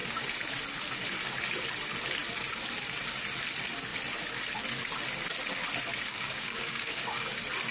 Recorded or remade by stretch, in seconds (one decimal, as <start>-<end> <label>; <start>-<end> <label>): 0.0-6.1 recorded; 6.1-7.3 remade; 7.3-7.7 recorded